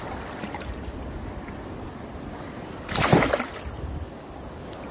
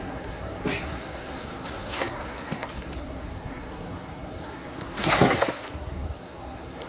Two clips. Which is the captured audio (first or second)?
first